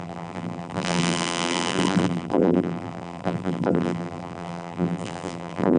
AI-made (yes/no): yes